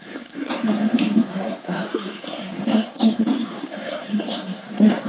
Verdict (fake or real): fake